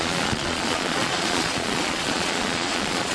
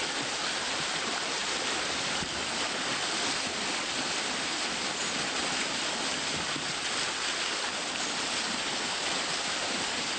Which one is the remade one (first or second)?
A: first